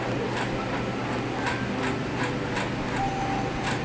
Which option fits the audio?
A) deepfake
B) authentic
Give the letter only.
B